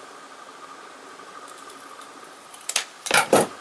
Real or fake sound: real